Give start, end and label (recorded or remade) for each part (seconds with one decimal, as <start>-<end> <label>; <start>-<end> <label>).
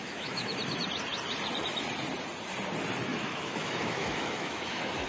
0.0-0.5 remade; 0.5-3.1 recorded; 3.1-5.1 remade